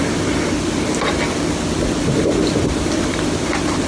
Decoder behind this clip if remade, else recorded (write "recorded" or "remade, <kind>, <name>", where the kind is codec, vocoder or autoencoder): recorded